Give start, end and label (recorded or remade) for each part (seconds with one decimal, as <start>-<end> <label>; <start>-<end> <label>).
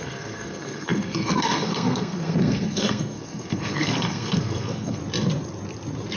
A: 0.0-5.0 remade; 5.0-6.2 recorded